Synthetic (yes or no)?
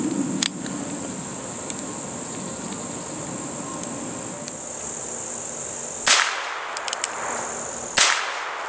no